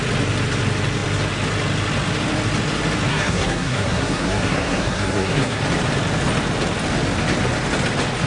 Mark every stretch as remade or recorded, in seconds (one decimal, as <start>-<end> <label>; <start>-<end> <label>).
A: 0.0-3.1 recorded; 3.1-5.6 remade; 5.6-8.3 recorded